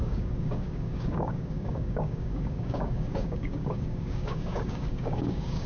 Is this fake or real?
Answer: fake